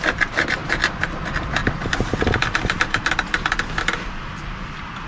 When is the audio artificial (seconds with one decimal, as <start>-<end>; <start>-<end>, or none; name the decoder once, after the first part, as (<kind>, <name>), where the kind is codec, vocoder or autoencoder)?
0.6-1.2 (vocoder, BigVGAN v2); 1.6-5.1